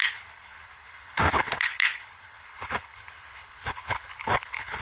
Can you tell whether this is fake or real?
fake